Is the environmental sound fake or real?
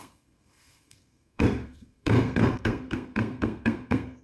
fake